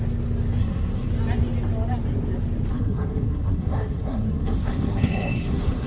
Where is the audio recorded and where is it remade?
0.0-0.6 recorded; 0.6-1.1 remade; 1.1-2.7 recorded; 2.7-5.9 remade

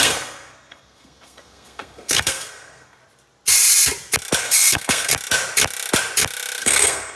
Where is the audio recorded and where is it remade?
0.0-3.0 remade; 3.0-4.4 recorded; 4.4-5.1 remade; 5.1-6.6 recorded; 6.6-7.2 remade

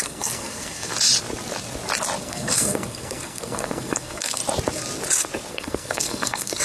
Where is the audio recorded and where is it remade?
0.0-0.9 remade; 0.9-2.2 recorded; 2.2-4.4 remade; 4.4-5.5 recorded; 5.5-6.6 remade

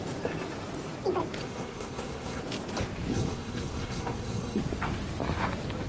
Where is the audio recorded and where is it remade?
0.0-1.4 recorded; 1.4-2.4 remade; 2.4-3.1 recorded; 3.1-4.6 remade; 4.6-5.9 recorded